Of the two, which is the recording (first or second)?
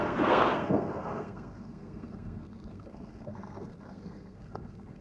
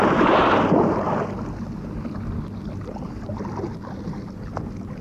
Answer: second